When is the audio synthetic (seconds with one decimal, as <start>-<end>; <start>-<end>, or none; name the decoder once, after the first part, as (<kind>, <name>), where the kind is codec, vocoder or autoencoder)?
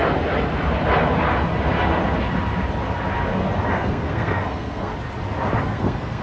3.7-4.9 (codec, SNAC); 5.6-6.2